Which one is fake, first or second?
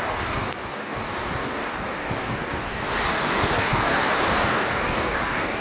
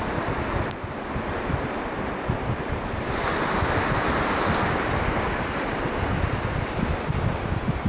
first